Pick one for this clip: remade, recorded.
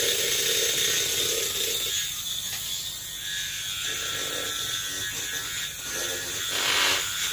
recorded